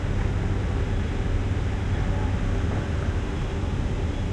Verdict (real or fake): real